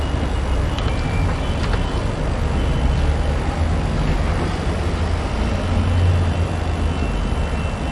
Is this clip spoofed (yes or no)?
no